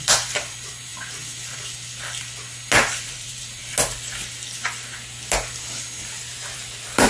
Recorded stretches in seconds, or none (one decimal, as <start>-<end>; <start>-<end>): 0.9-2.9; 3.6-6.5